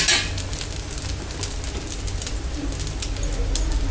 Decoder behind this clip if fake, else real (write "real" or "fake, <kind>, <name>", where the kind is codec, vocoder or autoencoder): real